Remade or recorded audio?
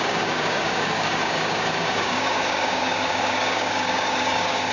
remade